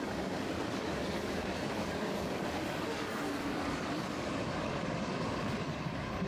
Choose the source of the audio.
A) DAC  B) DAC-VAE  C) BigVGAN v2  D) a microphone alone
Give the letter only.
A